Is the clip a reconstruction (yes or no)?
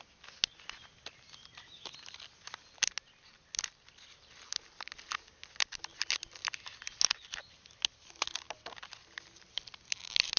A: no